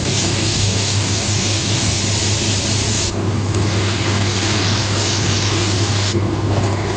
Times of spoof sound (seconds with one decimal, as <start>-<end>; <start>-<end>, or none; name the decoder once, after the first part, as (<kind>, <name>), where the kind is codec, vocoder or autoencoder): 0.0-2.0 (codec, DAC); 2.9-7.0